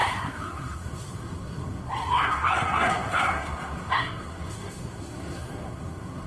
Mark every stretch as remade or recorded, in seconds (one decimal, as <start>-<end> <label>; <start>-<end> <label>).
0.0-6.3 remade